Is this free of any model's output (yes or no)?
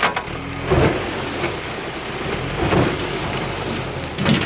yes